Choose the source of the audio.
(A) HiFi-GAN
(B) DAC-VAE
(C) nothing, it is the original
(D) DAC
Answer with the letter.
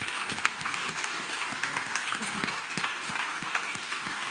D